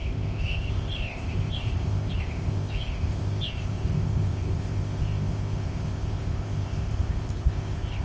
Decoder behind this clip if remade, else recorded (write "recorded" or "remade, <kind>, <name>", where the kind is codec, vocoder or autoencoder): remade, codec, ZipCodec